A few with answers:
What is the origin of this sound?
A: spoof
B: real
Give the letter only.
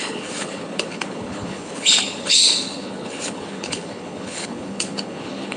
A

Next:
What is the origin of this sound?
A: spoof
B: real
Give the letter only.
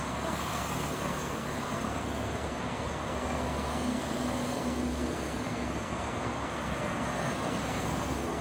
A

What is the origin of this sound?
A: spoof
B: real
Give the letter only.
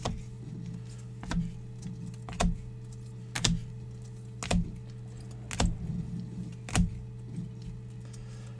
B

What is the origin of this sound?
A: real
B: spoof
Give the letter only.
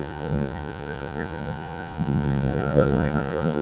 B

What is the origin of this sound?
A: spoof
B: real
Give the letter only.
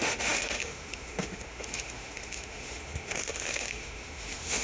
A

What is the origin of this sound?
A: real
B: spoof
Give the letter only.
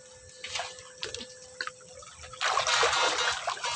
A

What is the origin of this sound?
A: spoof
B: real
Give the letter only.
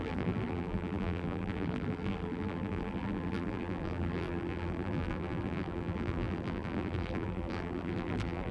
A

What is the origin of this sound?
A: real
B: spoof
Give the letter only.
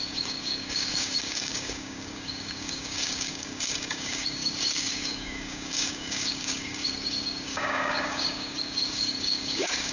B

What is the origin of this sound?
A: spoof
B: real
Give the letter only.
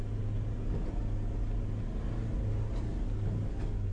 B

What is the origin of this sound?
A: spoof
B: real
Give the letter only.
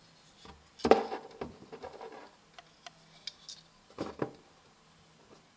B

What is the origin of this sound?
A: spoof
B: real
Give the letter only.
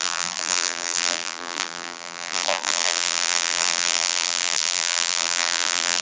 A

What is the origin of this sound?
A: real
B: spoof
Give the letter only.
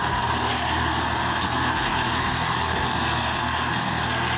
B